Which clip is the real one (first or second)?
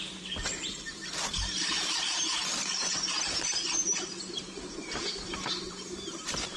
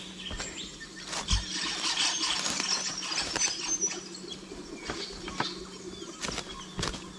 second